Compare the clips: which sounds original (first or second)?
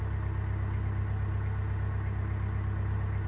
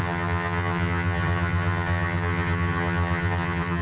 first